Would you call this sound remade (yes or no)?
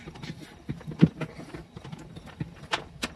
no